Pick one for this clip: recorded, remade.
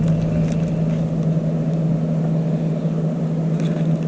recorded